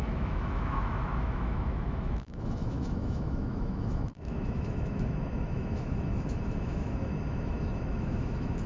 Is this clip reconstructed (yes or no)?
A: yes